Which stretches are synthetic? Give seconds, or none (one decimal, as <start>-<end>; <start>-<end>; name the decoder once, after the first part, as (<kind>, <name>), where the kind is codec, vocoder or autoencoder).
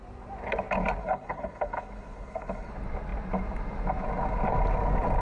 1.0-2.7 (codec, HILCodec)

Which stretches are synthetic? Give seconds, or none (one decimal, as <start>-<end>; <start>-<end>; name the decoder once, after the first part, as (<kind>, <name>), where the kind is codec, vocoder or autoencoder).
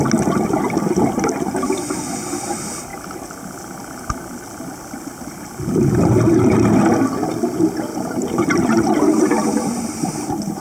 7.9-10.6 (vocoder, BigVGAN v2)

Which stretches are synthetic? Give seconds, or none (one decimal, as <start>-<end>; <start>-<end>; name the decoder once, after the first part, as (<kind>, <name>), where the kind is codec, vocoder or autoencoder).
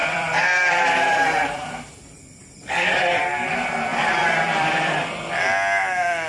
0.0-1.7 (vocoder, BigVGAN v2); 3.9-5.1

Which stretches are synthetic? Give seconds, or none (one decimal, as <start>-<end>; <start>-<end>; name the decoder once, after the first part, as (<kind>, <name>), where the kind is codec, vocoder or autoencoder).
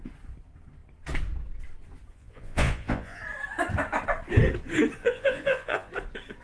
2.1-3.2 (vocoder, Vocos); 5.0-5.9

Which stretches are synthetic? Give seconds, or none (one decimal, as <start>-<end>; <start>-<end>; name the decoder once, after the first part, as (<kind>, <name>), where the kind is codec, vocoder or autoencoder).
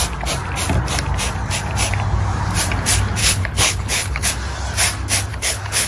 3.2-4.3 (codec, HILCodec); 5.3-5.9